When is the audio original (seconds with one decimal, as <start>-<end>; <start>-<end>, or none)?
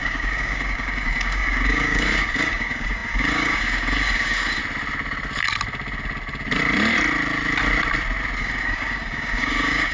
4.6-8.4